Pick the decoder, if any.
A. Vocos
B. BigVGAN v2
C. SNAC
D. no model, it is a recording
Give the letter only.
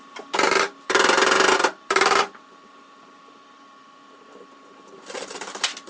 B